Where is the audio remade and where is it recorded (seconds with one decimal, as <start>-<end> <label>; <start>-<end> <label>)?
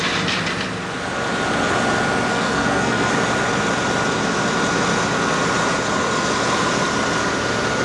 0.0-2.3 recorded; 2.3-3.1 remade; 3.1-7.8 recorded